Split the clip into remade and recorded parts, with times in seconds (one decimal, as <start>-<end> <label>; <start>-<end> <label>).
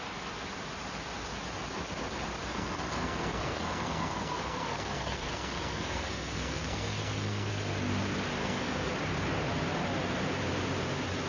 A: 0.0-2.4 recorded; 2.4-7.5 remade; 7.5-8.4 recorded; 8.4-8.9 remade; 8.9-11.3 recorded